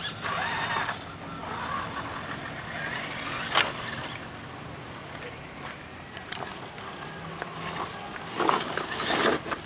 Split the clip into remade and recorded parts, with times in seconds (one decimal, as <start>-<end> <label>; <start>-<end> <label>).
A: 0.0-9.7 recorded